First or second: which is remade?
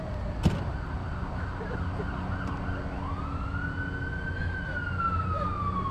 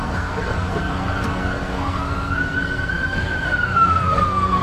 second